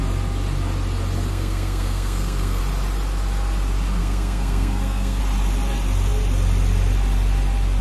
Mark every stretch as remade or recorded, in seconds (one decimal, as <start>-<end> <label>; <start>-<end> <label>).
0.0-1.3 recorded; 1.3-2.6 remade; 2.6-4.0 recorded; 4.0-5.2 remade; 5.2-7.8 recorded

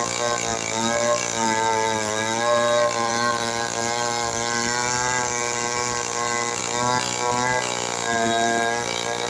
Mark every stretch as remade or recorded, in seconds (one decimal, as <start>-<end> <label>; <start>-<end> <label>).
0.0-9.3 recorded